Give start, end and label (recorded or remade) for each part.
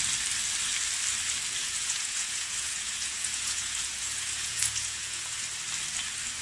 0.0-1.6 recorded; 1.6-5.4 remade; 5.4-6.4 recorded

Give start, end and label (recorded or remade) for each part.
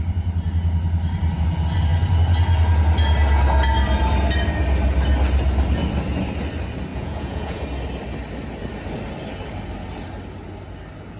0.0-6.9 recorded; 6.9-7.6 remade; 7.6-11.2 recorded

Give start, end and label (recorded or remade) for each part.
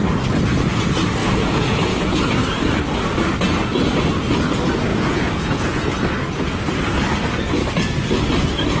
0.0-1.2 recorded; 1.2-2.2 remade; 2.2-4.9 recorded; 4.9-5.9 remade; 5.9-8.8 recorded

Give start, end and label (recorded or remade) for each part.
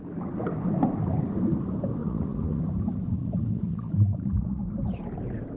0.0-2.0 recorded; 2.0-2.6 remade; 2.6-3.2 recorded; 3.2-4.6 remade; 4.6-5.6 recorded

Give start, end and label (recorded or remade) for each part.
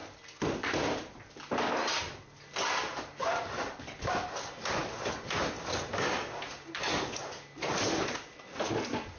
0.0-9.2 recorded